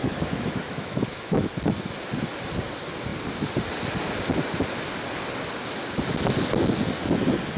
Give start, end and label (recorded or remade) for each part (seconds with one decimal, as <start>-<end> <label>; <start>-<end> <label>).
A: 0.0-1.5 remade; 1.5-7.6 recorded